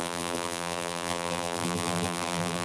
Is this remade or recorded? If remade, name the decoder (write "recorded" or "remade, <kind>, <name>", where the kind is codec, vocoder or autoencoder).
remade, vocoder, BigVGAN v2